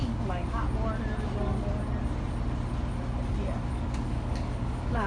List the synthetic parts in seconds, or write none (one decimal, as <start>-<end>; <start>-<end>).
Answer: 0.0-0.6; 3.7-5.1